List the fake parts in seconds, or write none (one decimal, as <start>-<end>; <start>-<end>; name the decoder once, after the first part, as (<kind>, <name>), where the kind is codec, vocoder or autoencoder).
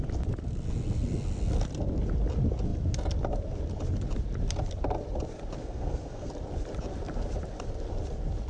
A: 5.6-6.3 (codec, SNAC)